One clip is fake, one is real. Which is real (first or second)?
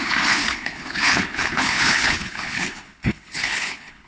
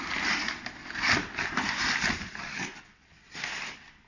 second